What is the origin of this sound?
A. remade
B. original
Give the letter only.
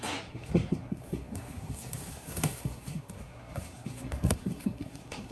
A